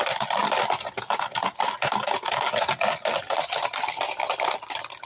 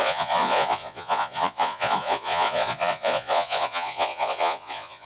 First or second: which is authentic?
first